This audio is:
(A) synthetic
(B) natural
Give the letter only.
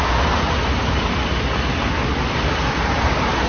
B